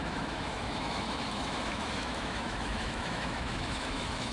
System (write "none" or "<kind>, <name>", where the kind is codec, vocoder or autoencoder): autoencoder, DAC-VAE